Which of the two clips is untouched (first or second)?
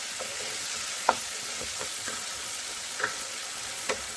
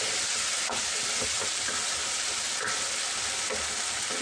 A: second